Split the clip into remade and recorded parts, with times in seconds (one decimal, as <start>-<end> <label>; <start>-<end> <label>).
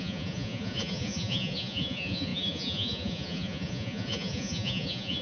0.0-5.2 remade